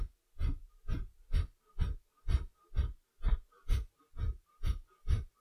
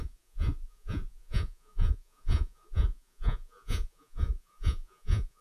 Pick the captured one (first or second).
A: first